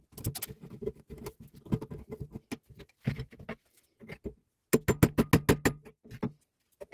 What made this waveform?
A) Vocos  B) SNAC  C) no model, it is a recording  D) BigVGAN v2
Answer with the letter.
C